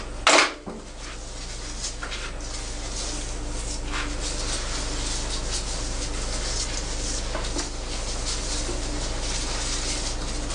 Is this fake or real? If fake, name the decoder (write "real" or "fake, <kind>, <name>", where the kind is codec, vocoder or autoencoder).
real